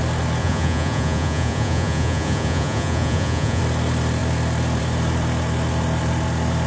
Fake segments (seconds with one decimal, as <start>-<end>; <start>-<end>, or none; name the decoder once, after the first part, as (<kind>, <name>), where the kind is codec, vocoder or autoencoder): 0.4-3.6 (vocoder, Vocos)